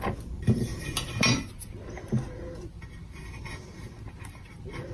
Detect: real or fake real